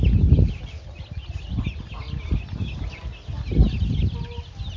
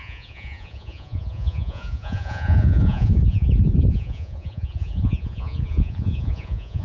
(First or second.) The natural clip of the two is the first